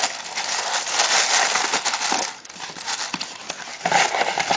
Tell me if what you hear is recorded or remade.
recorded